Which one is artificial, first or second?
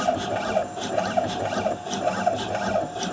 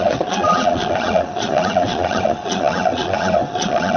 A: second